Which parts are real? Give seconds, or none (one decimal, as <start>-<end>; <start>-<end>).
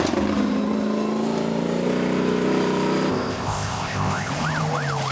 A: 0.0-3.1; 4.3-5.1